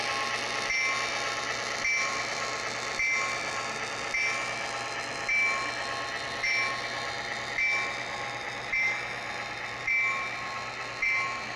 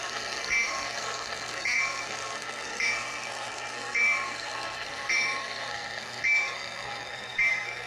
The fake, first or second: second